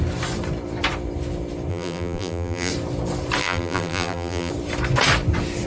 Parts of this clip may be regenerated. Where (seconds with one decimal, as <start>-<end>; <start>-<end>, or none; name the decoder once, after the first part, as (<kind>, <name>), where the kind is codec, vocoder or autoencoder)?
1.7-2.7 (vocoder, BigVGAN v2); 3.4-4.5